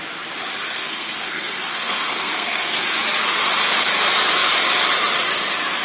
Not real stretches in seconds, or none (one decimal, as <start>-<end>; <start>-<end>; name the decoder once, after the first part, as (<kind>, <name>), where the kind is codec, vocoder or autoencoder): 0.6-2.8 (codec, SNAC)